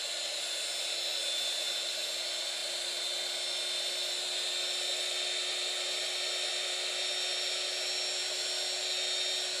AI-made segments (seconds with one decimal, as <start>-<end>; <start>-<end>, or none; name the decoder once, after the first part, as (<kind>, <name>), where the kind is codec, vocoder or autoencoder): none